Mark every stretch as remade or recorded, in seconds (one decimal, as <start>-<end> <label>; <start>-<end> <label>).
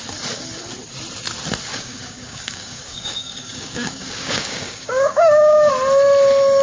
0.0-1.7 recorded; 1.7-5.7 remade; 5.7-6.6 recorded